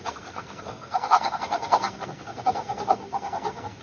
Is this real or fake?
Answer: fake